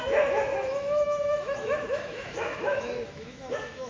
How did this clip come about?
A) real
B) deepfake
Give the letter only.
B